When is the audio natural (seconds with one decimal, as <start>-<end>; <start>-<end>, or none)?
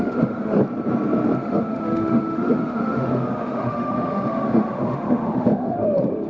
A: 0.6-1.4